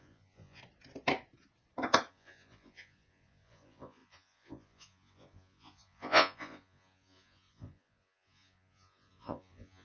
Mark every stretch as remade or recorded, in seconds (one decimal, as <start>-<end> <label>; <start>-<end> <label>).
0.0-0.6 remade; 0.6-2.1 recorded; 2.1-9.8 remade